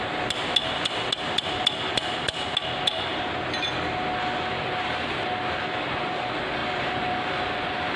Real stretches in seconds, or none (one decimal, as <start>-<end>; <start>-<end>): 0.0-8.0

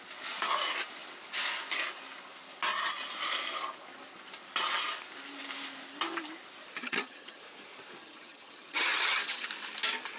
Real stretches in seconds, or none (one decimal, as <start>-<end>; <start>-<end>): 0.0-6.8; 7.4-8.0; 9.5-10.2

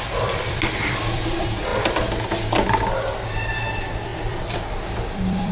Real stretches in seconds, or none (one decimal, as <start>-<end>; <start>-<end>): 1.7-3.5